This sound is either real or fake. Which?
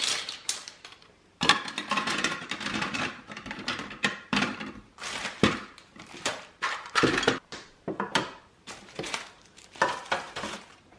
fake